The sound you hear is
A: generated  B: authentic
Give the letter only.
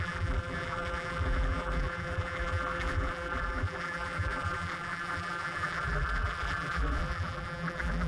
A